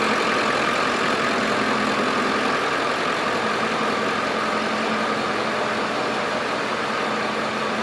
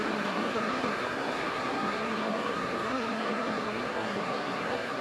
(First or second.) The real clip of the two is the first